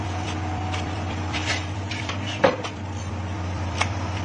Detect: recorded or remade remade